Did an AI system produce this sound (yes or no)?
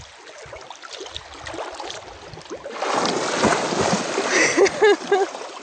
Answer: no